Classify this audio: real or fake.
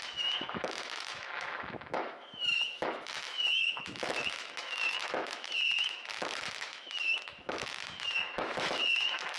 fake